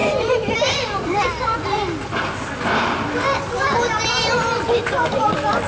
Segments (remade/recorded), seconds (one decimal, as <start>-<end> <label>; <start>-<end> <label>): 0.0-3.4 remade; 3.4-5.7 recorded